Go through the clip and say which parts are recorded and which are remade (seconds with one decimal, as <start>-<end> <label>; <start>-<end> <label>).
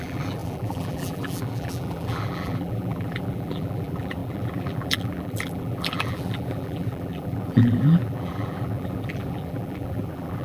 0.0-10.4 remade